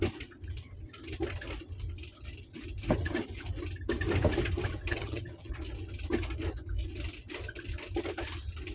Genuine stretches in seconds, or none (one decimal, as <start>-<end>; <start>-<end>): 0.0-4.9; 5.5-8.7